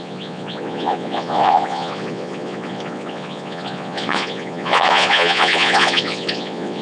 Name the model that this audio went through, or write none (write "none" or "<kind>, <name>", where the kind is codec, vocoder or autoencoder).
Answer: vocoder, Vocos